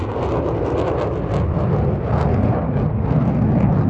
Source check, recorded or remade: recorded